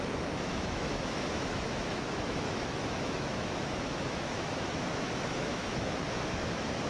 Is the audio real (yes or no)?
no